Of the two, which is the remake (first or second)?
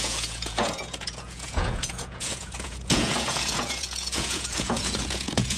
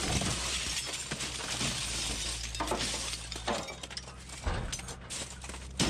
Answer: first